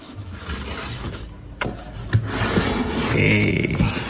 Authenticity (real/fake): real